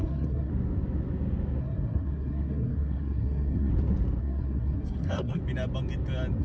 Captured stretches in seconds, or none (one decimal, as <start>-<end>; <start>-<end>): 0.5-1.6; 3.7-4.2; 5.4-6.4